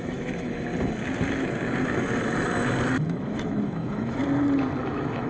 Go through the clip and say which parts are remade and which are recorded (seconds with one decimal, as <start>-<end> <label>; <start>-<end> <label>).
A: 0.0-0.7 remade; 0.7-3.1 recorded; 3.1-4.2 remade; 4.2-4.8 recorded; 4.8-5.3 remade